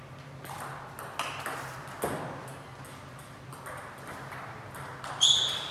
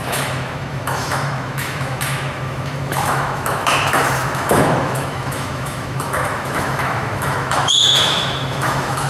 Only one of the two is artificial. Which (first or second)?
second